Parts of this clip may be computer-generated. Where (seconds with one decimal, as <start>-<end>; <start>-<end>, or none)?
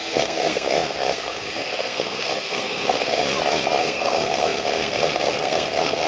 0.0-3.2; 3.8-6.1